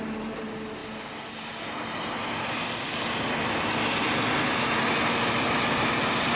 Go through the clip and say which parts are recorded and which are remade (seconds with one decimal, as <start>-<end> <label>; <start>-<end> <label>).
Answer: 0.0-6.4 recorded

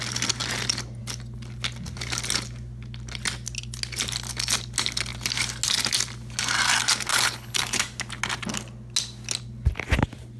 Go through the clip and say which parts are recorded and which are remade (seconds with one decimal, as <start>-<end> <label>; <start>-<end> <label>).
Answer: 0.0-7.1 recorded; 7.1-7.8 remade; 7.8-10.4 recorded

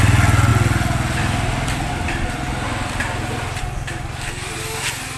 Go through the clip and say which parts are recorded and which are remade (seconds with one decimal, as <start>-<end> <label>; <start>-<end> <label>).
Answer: 0.0-5.2 recorded

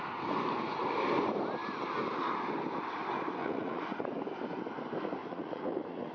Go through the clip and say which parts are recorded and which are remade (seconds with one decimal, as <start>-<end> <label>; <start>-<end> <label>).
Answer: 0.0-3.4 recorded; 3.4-4.0 remade; 4.0-5.2 recorded; 5.2-6.1 remade

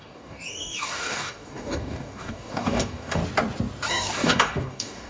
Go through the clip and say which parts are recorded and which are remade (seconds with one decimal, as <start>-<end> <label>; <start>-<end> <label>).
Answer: 0.0-3.2 remade; 3.2-3.9 recorded; 3.9-5.1 remade

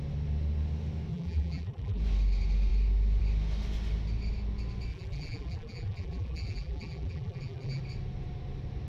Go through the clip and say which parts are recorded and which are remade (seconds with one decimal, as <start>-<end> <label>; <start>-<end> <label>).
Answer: 0.0-1.1 recorded; 1.1-2.0 remade; 2.0-4.9 recorded; 4.9-7.8 remade; 7.8-8.9 recorded